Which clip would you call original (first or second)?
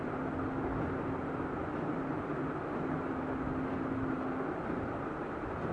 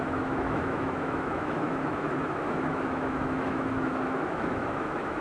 first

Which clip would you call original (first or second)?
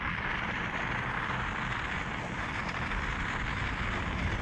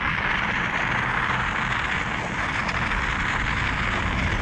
second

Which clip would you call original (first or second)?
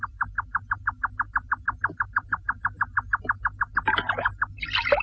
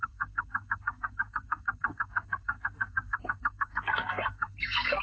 first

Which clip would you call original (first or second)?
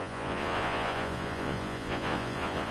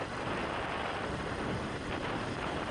second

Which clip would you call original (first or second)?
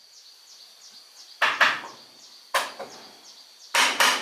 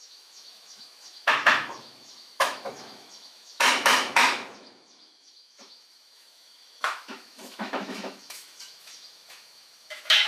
first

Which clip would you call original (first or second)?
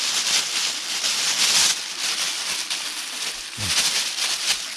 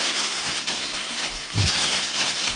first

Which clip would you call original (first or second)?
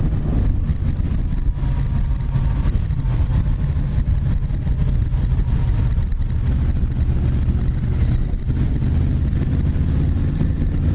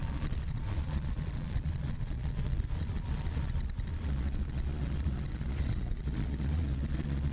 first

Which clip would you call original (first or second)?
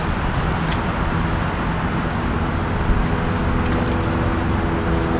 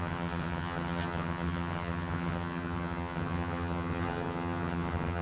first